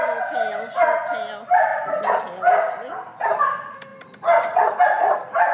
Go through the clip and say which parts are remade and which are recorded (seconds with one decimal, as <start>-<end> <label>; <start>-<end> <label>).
0.0-5.5 recorded